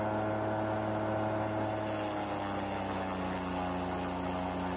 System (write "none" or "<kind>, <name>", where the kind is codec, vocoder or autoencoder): none